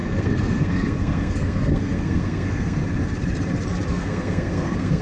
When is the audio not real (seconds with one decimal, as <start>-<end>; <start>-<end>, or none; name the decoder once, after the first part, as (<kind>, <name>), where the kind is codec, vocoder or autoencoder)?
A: 0.0-2.8 (codec, SNAC); 3.9-5.0